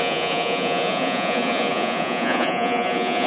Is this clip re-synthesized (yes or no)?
yes